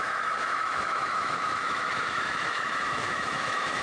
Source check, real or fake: fake